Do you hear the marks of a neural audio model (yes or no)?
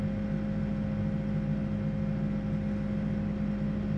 no